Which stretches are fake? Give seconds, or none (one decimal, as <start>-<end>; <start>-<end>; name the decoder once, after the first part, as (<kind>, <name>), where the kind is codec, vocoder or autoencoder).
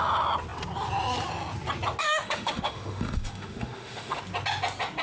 2.0-4.2 (autoencoder, DAC-VAE)